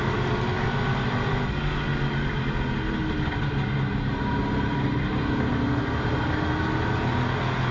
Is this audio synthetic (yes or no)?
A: no